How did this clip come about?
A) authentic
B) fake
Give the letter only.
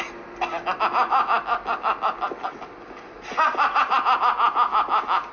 A